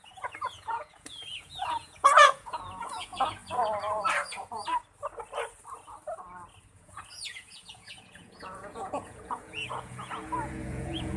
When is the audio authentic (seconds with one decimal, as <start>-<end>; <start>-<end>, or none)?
3.4-6.7